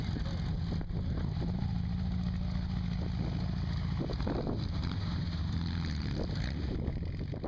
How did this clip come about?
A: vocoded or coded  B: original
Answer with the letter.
B